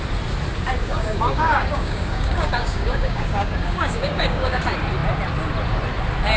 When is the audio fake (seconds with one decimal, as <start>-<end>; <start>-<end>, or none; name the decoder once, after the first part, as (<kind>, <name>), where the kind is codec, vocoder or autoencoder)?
0.8-4.6 (codec, DAC)

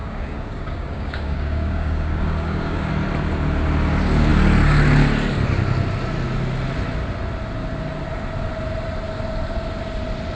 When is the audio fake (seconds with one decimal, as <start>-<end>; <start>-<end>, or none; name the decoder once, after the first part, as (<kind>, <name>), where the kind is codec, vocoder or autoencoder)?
0.0-2.9 (codec, DAC)

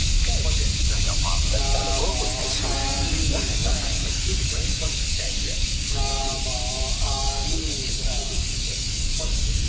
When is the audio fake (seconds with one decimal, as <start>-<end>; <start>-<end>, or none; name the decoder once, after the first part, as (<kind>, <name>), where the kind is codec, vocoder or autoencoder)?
2.6-6.3 (codec, DAC); 7.0-9.7

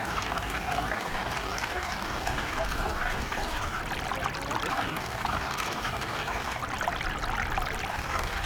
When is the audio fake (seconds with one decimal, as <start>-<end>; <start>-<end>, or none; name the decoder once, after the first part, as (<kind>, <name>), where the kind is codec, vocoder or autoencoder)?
0.0-3.8 (codec, DAC); 4.7-6.6; 7.9-8.4

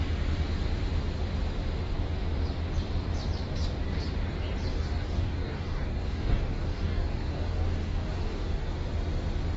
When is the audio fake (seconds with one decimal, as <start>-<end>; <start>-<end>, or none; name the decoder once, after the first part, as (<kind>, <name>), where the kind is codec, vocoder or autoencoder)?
4.7-8.7 (codec, DAC)

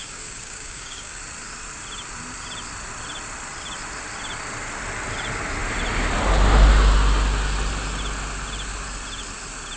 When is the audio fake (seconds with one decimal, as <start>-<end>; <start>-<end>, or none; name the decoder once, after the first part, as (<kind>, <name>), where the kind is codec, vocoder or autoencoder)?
0.0-1.2 (codec, DAC)

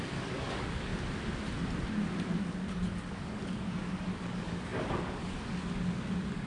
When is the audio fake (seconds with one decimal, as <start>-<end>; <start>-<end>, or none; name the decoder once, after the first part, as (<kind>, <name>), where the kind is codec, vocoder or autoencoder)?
0.0-0.9 (codec, DAC); 2.4-6.5

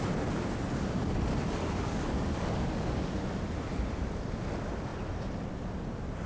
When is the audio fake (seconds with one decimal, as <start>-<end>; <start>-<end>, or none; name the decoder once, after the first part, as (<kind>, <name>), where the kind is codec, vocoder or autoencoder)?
1.6-3.1 (codec, DAC)